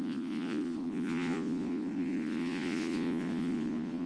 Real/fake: fake